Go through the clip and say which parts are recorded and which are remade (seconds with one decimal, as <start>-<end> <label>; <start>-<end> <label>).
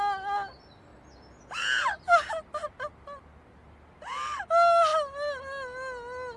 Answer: 0.0-6.4 recorded